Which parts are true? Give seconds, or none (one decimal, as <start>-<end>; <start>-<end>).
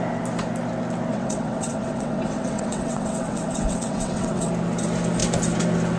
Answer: 0.0-1.1; 4.5-6.0